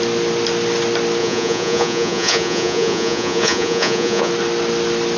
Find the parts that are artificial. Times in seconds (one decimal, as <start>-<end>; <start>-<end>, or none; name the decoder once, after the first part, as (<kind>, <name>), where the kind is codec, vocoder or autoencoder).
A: 1.2-4.3 (vocoder, Vocos)